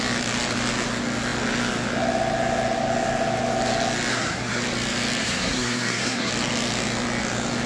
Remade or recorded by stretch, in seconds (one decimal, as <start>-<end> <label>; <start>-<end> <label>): 0.0-4.1 recorded; 4.1-4.6 remade; 4.6-5.2 recorded; 5.2-6.3 remade; 6.3-7.7 recorded